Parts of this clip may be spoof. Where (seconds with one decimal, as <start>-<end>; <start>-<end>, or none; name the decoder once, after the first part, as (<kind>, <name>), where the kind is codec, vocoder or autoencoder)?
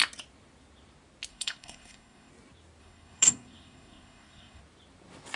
1.3-2.3 (codec, SNAC); 2.8-4.6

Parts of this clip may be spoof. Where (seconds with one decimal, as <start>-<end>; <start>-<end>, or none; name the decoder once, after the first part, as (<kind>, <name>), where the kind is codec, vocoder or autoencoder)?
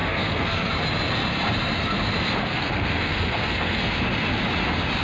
0.0-0.7 (codec, SNAC); 2.4-3.8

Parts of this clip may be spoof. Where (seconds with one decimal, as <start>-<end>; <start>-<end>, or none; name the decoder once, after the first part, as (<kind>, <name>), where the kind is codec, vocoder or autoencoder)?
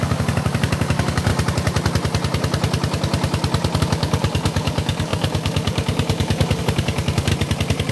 0.0-1.3 (codec, DAC); 3.8-7.3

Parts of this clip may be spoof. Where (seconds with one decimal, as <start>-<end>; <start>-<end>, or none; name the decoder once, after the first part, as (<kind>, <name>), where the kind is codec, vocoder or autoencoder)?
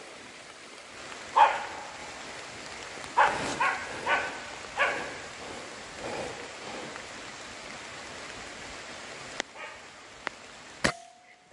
none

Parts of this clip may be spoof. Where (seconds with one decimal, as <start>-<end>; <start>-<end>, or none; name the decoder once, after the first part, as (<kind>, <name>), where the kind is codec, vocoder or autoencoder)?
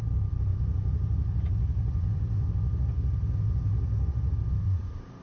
0.5-2.5 (vocoder, BigVGAN v2)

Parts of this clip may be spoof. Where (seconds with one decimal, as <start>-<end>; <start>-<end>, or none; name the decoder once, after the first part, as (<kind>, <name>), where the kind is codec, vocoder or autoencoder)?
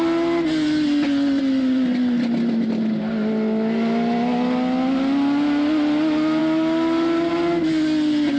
none